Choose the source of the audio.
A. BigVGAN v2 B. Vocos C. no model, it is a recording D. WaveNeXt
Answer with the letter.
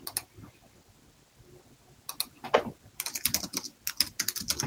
C